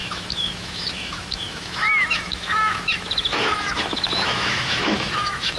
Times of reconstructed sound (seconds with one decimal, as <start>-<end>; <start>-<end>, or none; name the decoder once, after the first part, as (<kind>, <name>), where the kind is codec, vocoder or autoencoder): 0.0-5.6 (autoencoder, DAC-VAE)